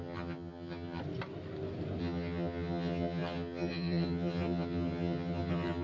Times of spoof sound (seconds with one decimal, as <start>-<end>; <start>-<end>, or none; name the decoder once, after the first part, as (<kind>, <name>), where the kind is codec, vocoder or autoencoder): 0.0-1.0 (vocoder, HiFi-GAN); 2.0-5.8